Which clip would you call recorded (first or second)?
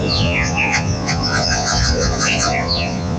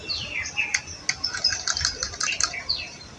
second